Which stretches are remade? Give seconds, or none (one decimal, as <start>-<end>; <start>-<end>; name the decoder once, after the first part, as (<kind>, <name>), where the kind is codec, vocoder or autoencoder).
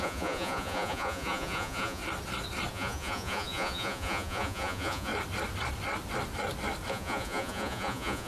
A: 0.0-2.0 (vocoder, Vocos); 2.7-5.1; 6.9-8.3